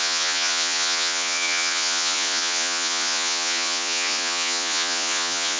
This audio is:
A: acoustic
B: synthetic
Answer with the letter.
B